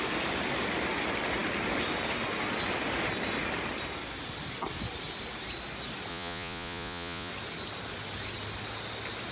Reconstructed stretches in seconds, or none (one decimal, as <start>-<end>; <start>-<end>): 6.1-7.3